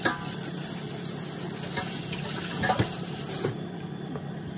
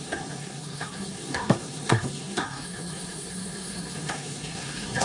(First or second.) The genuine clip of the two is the first